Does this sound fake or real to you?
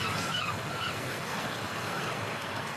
fake